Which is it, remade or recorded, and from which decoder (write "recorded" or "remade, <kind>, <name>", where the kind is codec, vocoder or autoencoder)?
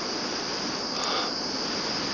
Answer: recorded